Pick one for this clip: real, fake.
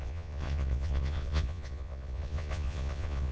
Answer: fake